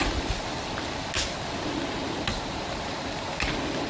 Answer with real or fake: real